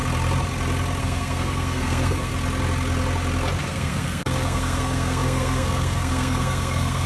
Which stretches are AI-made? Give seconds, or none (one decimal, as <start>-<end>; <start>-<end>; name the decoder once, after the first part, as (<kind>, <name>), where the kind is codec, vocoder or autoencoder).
1.0-2.3 (codec, SNAC); 3.6-7.1